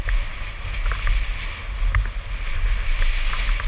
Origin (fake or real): real